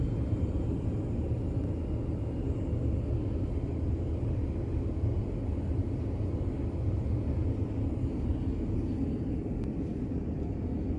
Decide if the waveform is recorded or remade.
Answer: recorded